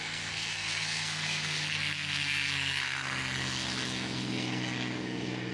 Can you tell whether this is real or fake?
fake